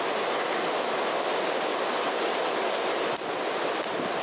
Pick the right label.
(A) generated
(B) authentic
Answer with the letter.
B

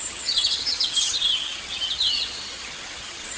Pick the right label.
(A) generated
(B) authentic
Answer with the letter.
A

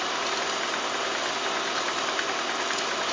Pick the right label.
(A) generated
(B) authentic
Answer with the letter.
B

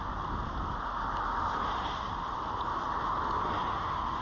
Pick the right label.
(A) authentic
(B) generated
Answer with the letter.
A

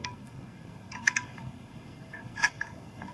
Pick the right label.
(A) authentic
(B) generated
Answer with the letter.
B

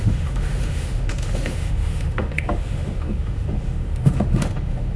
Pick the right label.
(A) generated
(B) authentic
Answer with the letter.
A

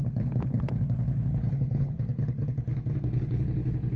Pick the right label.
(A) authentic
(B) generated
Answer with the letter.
B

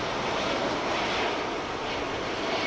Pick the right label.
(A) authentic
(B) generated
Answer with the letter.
A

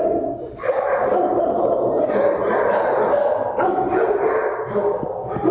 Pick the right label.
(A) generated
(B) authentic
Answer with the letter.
B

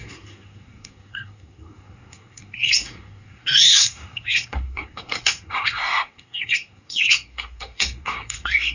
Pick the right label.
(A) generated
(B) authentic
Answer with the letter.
A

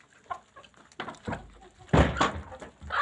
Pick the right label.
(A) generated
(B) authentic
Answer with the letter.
B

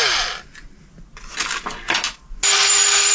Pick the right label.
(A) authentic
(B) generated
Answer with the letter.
A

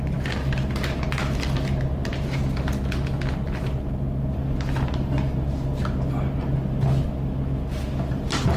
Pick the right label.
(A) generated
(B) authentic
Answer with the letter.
B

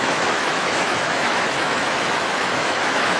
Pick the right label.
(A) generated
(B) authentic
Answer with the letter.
A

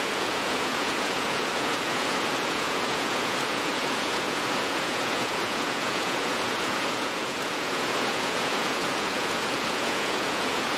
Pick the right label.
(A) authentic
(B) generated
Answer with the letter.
B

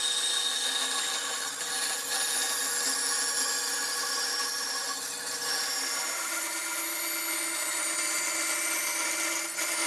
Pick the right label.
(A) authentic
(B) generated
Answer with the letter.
A